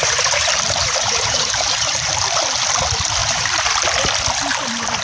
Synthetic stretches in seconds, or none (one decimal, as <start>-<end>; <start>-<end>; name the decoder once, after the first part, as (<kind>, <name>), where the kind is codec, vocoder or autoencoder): 0.0-2.1 (vocoder, BigVGAN v2); 3.2-3.7